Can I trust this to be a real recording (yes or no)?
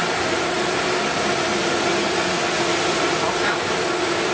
yes